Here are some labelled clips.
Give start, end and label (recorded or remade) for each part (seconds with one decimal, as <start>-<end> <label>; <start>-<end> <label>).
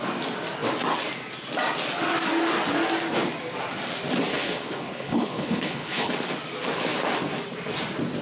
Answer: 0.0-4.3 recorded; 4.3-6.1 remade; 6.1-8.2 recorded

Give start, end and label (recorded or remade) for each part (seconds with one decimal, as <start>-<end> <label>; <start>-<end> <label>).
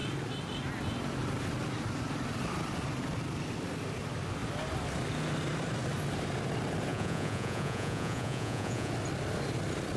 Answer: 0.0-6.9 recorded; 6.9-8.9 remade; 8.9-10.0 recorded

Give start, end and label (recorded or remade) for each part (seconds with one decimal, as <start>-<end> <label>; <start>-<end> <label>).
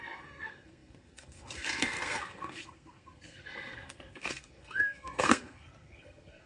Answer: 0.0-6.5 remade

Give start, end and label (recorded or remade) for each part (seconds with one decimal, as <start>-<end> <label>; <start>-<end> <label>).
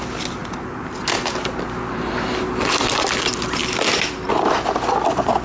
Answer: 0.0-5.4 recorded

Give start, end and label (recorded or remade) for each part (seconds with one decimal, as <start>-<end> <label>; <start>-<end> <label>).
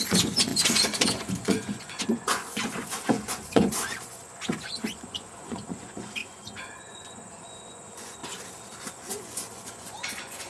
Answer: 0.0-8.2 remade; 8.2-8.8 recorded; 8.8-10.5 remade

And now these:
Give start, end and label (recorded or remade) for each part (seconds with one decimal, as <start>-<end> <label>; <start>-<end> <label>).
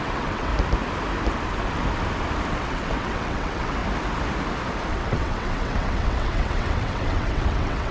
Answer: 0.0-0.5 remade; 0.5-2.5 recorded; 2.5-3.8 remade; 3.8-4.9 recorded; 4.9-7.9 remade